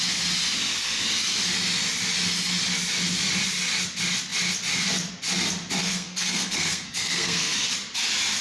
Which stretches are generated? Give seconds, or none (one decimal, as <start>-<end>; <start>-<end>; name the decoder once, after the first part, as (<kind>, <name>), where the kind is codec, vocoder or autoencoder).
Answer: 5.8-7.7 (codec, SNAC)